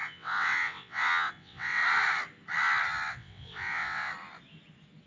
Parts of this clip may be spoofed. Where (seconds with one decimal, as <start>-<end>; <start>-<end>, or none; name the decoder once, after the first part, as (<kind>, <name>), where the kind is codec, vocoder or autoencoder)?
0.0-1.8 (vocoder, WaveNeXt); 3.1-4.1